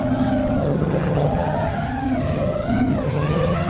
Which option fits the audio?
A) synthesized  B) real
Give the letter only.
A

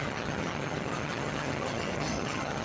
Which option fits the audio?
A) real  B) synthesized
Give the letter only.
B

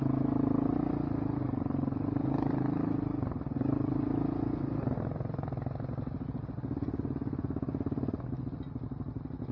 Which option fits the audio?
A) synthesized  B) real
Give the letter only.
B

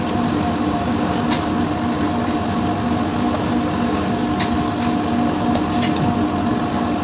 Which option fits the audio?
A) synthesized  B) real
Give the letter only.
B